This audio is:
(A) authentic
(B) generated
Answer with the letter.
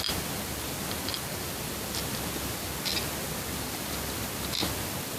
A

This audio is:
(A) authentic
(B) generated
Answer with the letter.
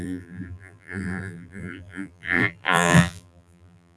B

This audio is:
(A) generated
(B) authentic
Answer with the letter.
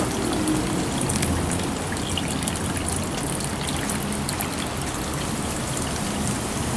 B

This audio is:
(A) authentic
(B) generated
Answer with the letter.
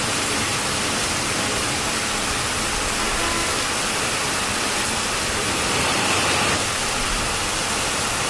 A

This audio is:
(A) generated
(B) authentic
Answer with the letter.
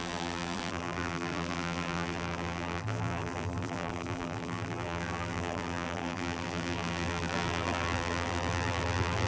A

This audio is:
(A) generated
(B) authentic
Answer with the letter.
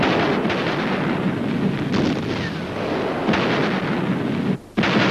B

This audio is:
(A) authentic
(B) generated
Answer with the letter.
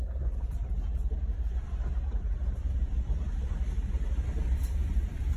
B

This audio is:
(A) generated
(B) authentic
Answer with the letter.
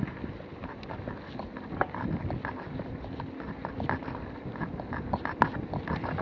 B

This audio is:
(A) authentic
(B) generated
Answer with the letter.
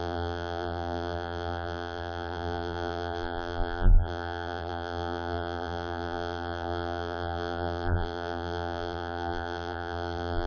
B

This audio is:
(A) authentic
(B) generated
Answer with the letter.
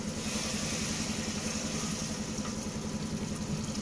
A